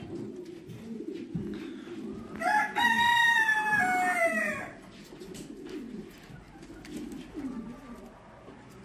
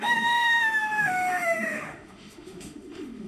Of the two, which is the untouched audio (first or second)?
first